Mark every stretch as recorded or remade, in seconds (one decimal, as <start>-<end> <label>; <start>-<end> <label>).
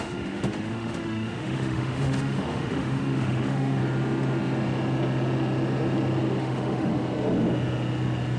0.0-3.8 remade; 3.8-6.4 recorded; 6.4-6.9 remade; 6.9-8.4 recorded